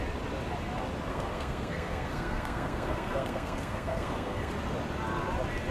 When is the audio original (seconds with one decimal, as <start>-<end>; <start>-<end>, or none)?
0.0-1.1; 4.5-5.7